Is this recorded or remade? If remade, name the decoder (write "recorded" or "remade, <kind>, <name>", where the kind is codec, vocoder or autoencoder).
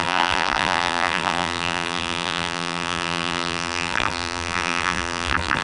remade, vocoder, BigVGAN v2